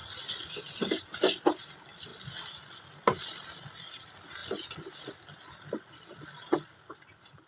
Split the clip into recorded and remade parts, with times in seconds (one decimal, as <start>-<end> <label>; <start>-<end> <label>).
0.0-7.5 recorded